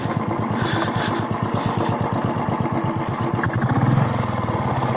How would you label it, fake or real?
real